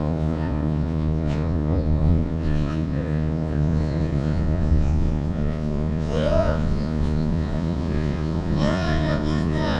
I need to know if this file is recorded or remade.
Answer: remade